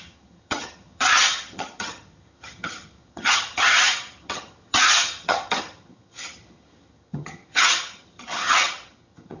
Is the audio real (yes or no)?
no